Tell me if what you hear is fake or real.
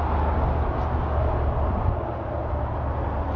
real